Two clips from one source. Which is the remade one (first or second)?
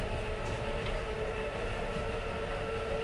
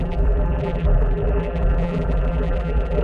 second